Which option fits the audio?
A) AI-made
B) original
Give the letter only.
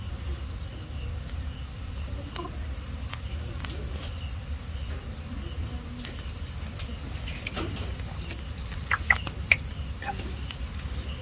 B